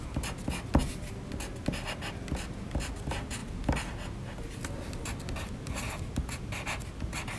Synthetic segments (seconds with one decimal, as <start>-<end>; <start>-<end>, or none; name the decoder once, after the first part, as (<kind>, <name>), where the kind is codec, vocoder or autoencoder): none